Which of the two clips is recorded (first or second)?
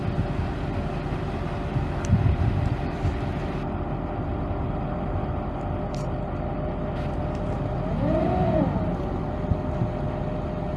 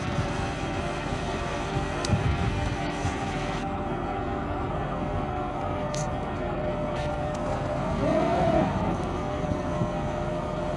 first